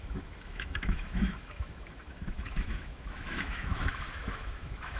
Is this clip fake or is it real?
fake